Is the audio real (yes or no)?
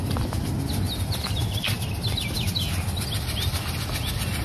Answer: yes